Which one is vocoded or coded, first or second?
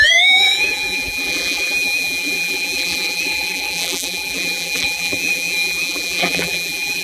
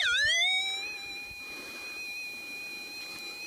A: first